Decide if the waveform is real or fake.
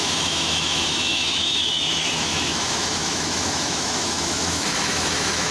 fake